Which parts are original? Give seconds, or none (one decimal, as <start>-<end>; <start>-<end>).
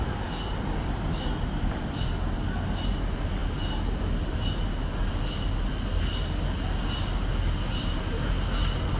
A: 0.0-0.5; 2.1-9.0